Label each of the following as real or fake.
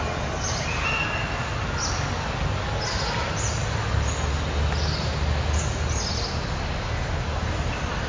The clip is real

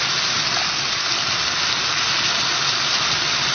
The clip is real